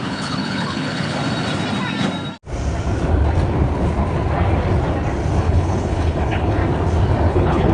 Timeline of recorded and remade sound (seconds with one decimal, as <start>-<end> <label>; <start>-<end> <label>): 0.0-1.2 remade; 1.2-5.4 recorded; 5.4-6.6 remade; 6.6-7.3 recorded; 7.3-7.7 remade